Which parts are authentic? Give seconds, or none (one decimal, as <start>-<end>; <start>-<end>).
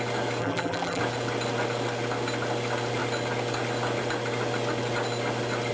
0.0-0.4; 1.0-5.7